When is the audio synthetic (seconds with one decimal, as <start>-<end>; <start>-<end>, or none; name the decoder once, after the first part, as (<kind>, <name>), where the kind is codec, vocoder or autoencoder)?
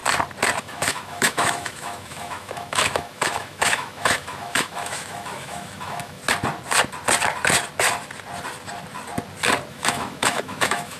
0.6-6.2 (autoencoder, DAC-VAE); 9.7-11.0